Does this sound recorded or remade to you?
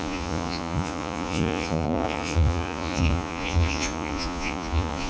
remade